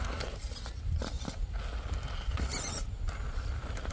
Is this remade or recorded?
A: recorded